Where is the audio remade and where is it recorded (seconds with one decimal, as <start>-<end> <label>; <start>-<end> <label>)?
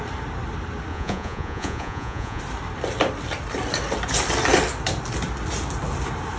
0.0-0.9 recorded; 0.9-2.4 remade; 2.4-6.4 recorded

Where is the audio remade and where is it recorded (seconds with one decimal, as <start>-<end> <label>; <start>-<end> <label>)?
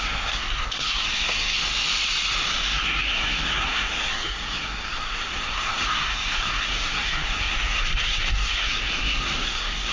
0.0-1.6 remade; 1.6-2.5 recorded; 2.5-9.9 remade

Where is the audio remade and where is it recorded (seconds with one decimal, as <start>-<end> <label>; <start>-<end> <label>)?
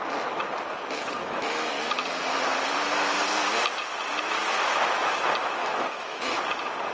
0.0-1.2 recorded; 1.2-1.7 remade; 1.7-4.4 recorded; 4.4-5.0 remade; 5.0-5.6 recorded; 5.6-6.2 remade; 6.2-6.9 recorded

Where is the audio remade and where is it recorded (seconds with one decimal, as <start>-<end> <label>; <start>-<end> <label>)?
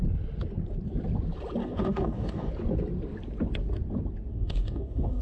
0.0-1.6 recorded; 1.6-2.5 remade; 2.5-4.3 recorded; 4.3-5.2 remade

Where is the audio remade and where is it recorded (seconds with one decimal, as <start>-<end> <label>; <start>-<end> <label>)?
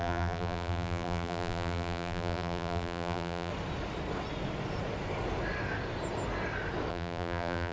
0.0-3.5 remade; 3.5-6.9 recorded; 6.9-7.7 remade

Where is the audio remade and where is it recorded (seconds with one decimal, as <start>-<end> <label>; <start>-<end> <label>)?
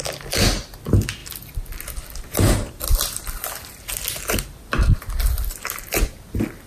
0.0-6.7 recorded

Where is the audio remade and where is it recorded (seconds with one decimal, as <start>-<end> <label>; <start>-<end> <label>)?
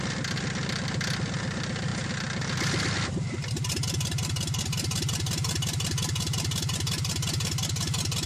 0.0-8.3 recorded